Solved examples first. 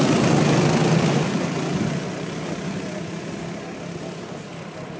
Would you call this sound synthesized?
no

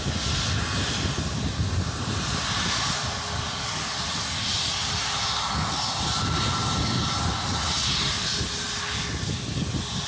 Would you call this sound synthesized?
no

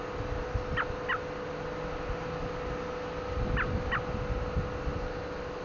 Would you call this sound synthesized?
no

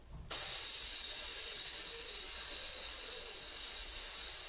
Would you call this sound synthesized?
no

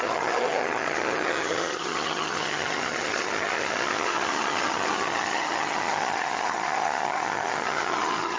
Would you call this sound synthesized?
yes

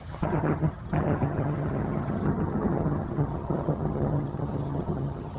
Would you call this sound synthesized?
yes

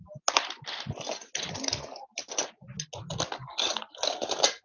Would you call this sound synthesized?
no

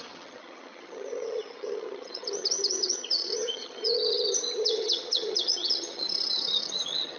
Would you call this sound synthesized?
yes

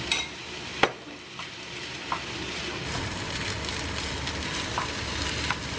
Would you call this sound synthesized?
no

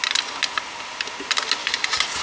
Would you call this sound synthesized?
no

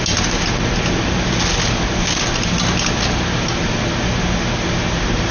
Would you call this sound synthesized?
no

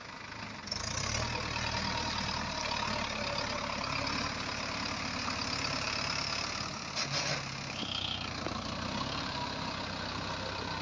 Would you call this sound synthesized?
no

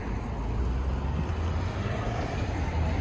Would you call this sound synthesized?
no